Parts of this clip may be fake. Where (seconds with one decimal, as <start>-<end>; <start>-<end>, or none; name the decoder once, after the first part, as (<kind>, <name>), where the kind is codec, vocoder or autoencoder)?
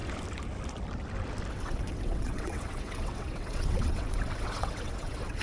1.5-5.4 (vocoder, WaveNeXt)